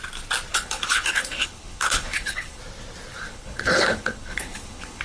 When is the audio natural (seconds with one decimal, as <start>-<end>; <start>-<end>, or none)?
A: 0.0-0.5; 2.6-3.3